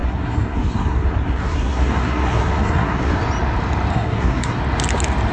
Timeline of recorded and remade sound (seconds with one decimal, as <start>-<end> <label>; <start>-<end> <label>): 0.0-3.2 remade; 3.2-3.9 recorded; 3.9-4.6 remade; 4.6-5.3 recorded